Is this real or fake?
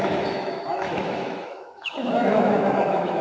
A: fake